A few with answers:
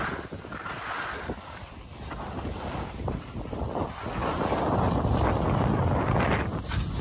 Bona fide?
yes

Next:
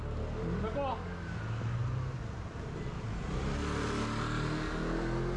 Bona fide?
yes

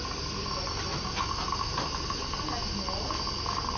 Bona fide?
yes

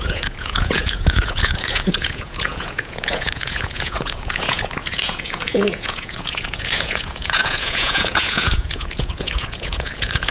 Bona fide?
no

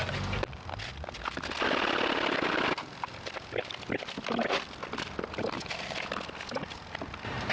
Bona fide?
yes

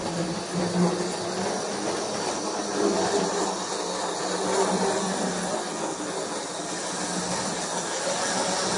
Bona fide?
yes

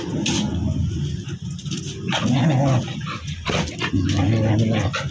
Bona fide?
yes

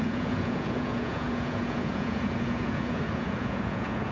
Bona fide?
no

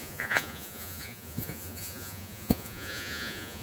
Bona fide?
no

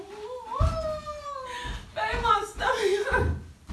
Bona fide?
yes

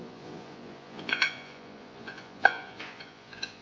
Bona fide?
no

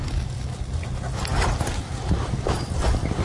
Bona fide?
yes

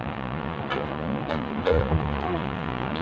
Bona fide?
no